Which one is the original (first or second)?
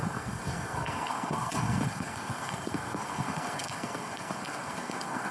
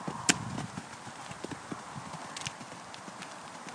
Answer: second